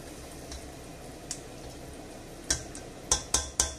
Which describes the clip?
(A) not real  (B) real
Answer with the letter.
B